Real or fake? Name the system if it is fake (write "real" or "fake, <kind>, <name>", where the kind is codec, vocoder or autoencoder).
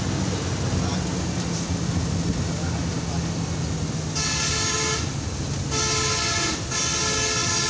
real